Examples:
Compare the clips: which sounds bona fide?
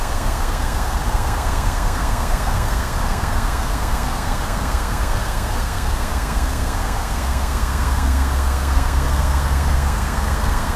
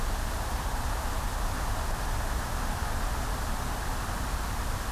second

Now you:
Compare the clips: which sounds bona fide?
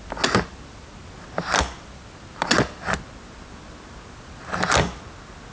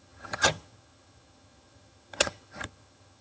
first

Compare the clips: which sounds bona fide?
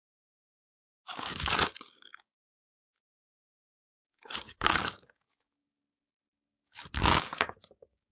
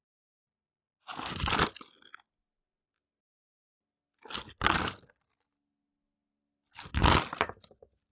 second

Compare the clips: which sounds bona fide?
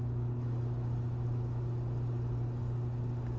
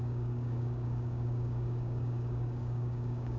first